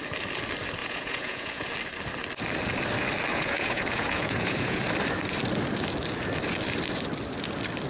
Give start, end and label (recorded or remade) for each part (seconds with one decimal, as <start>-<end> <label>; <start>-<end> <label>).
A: 0.0-0.8 recorded; 0.8-1.7 remade; 1.7-3.3 recorded; 3.3-4.8 remade; 4.8-7.9 recorded